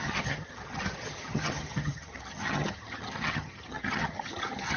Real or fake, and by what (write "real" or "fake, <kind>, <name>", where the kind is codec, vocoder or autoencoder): fake, vocoder, HiFi-GAN